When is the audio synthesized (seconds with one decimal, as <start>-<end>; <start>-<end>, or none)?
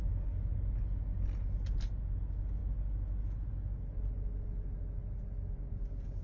none